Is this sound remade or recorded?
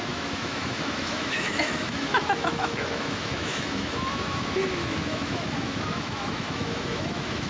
remade